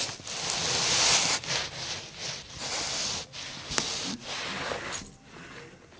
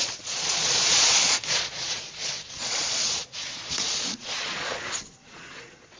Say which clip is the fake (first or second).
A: second